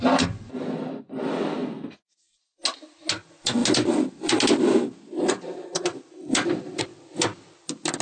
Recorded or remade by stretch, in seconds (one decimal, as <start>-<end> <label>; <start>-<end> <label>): 0.0-8.0 recorded